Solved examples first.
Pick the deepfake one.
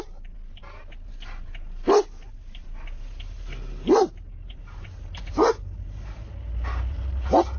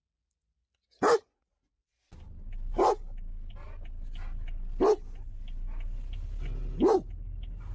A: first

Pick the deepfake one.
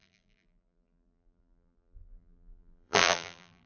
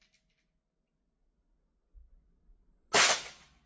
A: first